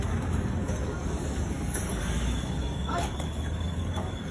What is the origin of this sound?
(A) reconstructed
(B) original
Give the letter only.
A